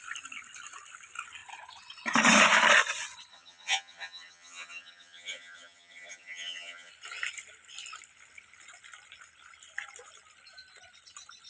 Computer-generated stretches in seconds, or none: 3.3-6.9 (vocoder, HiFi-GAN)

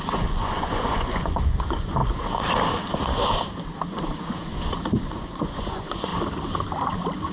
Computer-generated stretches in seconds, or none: 0.0-2.0 (vocoder, Vocos); 3.9-6.1

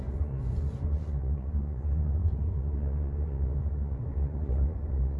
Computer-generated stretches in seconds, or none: 0.0-5.2 (vocoder, Vocos)

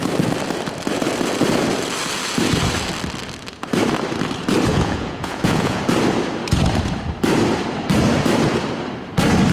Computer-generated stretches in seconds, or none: 4.7-5.8 (vocoder, Vocos)